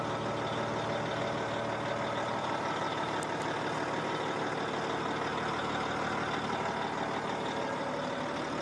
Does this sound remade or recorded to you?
recorded